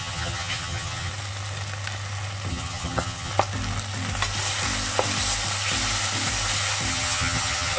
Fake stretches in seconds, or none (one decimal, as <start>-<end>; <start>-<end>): 0.0-1.1; 2.5-3.3; 6.9-7.8